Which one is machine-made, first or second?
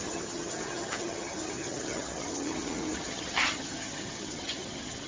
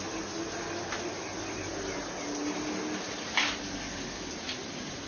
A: first